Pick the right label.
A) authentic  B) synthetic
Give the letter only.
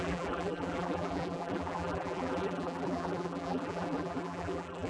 B